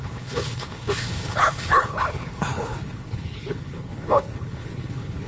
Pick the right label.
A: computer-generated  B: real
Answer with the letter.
A